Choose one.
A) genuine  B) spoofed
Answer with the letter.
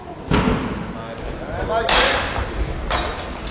A